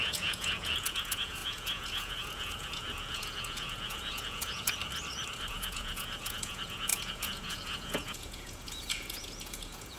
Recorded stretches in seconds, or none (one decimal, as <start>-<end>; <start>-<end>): 4.8-5.5